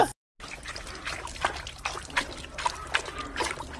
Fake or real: real